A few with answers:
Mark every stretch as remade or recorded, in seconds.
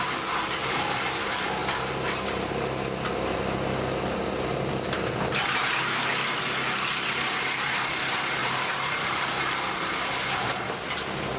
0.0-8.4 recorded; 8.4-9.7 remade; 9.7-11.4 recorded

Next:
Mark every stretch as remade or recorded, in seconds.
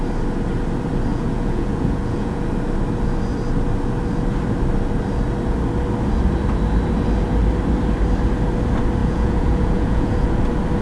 0.0-1.1 recorded; 1.1-2.4 remade; 2.4-9.0 recorded; 9.0-10.3 remade; 10.3-10.8 recorded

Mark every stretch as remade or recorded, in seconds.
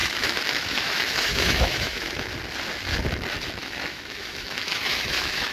0.0-2.3 remade; 2.3-3.6 recorded; 3.6-5.5 remade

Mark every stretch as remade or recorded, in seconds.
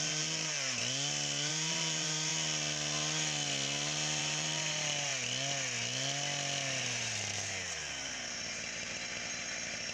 0.0-0.8 remade; 0.8-1.5 recorded; 1.5-2.3 remade; 2.3-4.2 recorded; 4.2-5.1 remade; 5.1-6.8 recorded; 6.8-9.9 remade